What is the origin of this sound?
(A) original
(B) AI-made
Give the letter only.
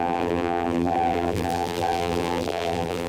B